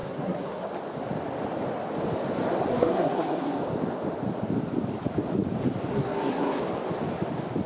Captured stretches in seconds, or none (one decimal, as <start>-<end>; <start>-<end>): 0.7-2.7; 3.6-5.9; 6.6-7.7